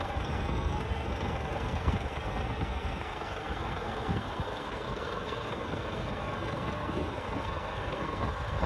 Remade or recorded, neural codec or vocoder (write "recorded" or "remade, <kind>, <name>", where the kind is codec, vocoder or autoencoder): remade, codec, SNAC